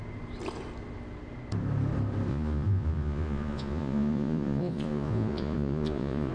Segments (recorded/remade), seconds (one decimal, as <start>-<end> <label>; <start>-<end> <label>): 0.0-2.3 recorded; 2.3-6.3 remade